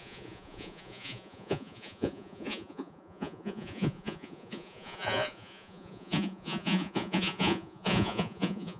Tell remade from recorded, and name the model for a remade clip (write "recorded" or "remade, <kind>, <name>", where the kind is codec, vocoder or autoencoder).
remade, vocoder, Vocos